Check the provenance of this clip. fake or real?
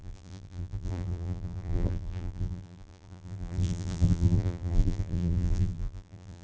fake